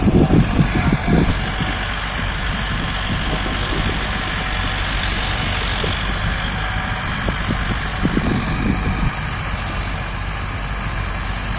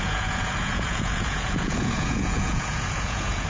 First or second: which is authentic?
first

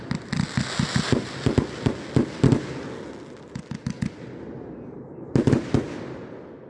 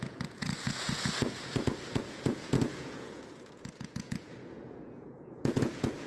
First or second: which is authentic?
first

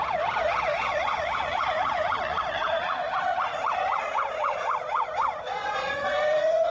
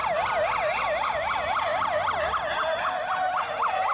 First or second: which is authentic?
second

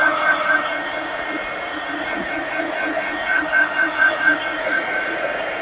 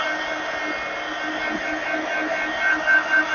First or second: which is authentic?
second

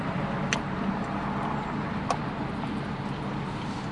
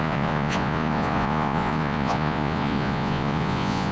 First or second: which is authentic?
first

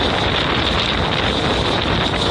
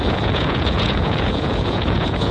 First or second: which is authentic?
first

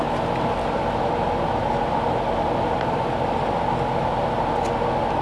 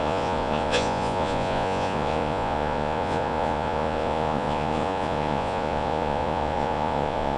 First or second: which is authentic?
first